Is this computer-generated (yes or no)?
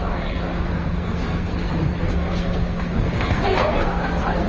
yes